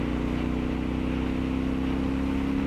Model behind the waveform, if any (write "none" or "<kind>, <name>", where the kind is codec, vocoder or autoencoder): none